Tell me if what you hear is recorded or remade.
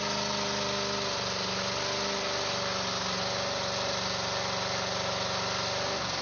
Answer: recorded